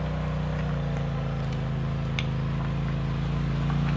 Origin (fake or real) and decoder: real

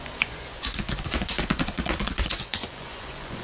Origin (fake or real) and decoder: fake, vocoder, Vocos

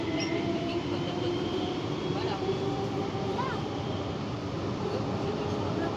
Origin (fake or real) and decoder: fake, vocoder, BigVGAN v2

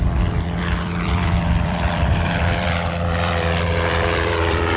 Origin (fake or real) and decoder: fake, vocoder, BigVGAN v2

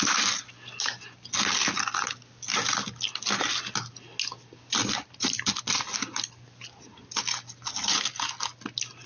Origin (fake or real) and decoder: real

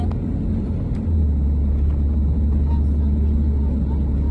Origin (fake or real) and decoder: real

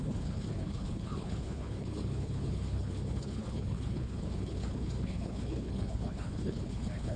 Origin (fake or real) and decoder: fake, codec, HILCodec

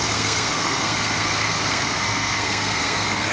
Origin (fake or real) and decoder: fake, codec, SNAC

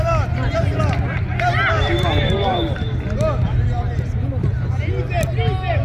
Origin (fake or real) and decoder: real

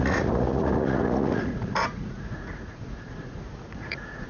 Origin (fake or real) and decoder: fake, vocoder, Vocos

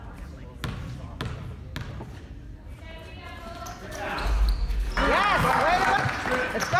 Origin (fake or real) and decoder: real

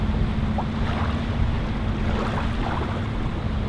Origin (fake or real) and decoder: real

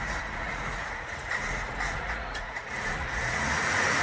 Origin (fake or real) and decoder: fake, vocoder, Vocos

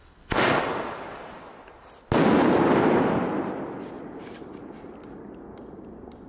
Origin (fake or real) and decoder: real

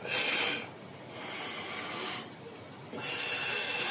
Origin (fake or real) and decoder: real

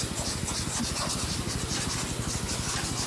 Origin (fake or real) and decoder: real